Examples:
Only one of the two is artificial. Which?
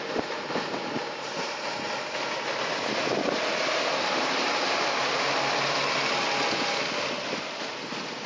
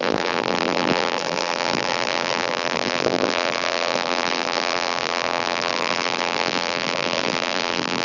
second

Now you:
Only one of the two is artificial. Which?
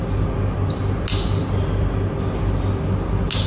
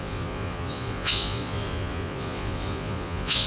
second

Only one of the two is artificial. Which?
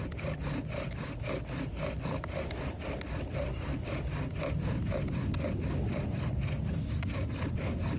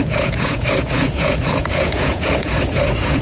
second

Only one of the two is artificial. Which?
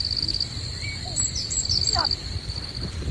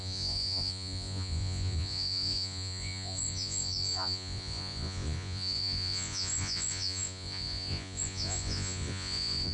second